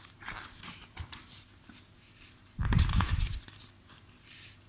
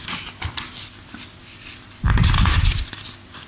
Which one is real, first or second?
second